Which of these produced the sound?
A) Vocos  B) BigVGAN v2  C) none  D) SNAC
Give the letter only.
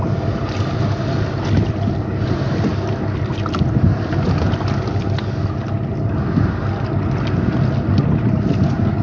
C